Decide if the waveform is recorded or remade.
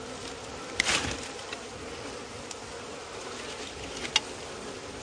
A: recorded